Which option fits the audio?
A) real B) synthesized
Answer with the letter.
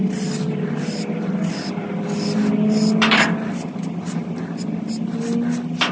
A